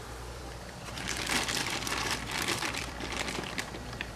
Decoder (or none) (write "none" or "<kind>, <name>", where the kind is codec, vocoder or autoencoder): vocoder, BigVGAN v2